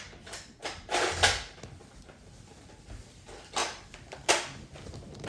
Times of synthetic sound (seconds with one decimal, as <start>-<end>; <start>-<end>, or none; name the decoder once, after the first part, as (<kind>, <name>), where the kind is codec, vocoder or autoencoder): none